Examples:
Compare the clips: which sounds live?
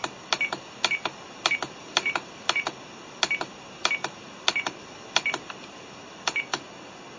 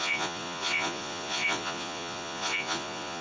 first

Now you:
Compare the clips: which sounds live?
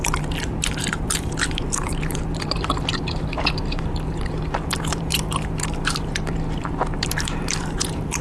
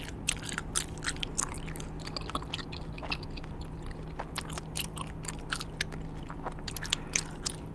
second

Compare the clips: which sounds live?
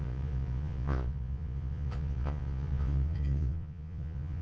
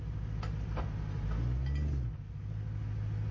second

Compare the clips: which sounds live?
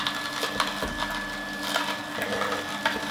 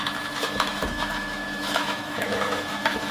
first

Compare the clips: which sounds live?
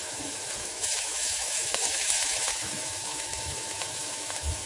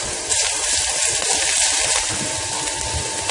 second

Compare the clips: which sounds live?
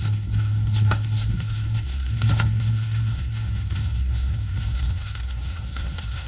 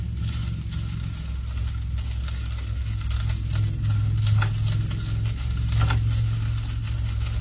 second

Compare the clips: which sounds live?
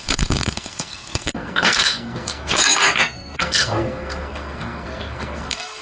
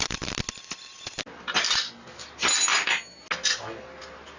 second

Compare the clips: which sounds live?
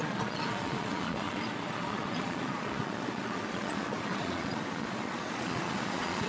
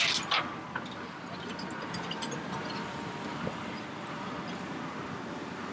second